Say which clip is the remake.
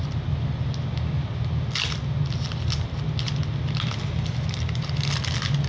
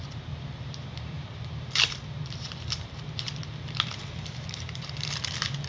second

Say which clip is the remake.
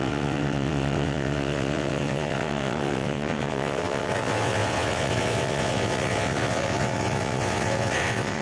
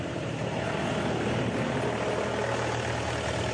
first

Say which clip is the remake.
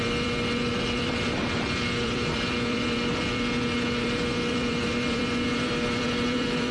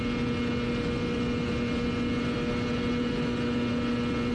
first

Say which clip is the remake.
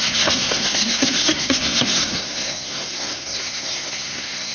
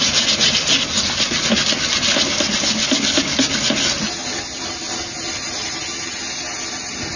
first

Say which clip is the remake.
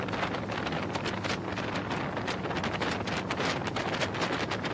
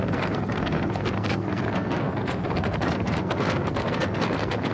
second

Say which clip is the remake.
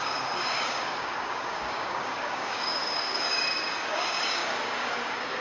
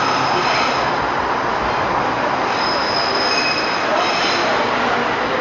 first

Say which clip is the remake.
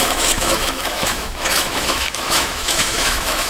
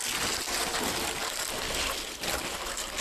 first